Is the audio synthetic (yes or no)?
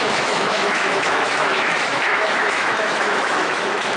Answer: yes